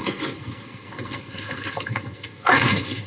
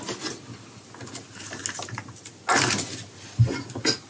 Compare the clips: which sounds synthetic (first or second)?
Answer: first